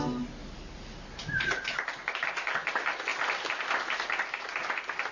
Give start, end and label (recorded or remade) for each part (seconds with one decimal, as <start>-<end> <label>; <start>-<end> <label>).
0.0-0.4 recorded; 0.4-1.3 remade; 1.3-5.1 recorded